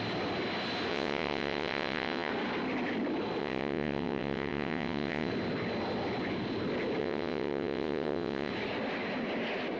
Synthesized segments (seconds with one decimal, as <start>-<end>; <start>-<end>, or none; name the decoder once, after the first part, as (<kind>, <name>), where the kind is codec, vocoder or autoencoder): 0.9-2.3 (vocoder, WaveNeXt); 3.4-5.3; 7.0-8.5